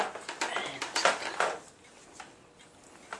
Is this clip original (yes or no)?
yes